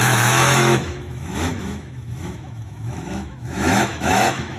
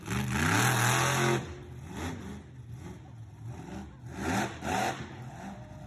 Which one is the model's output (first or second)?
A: first